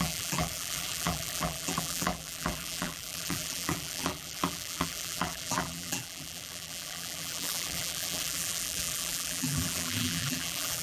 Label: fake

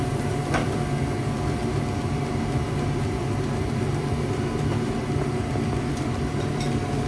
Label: fake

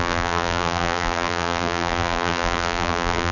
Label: fake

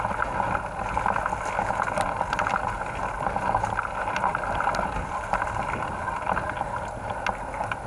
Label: real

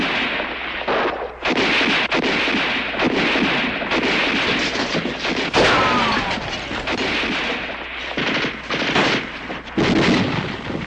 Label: real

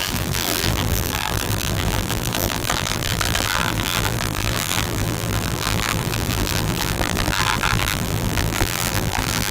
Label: fake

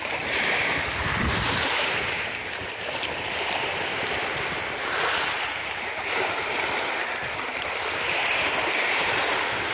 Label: fake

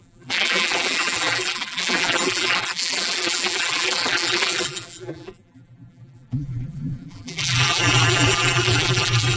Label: fake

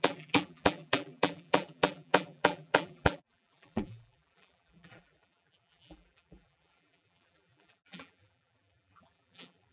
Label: fake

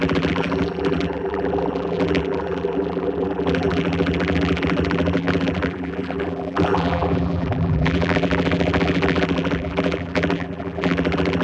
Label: fake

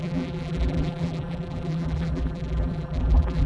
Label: fake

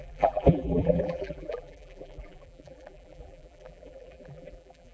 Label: fake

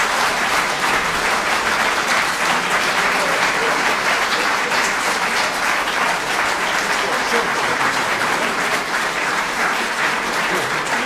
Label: fake